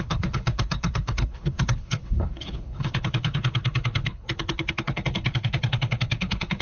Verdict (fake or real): fake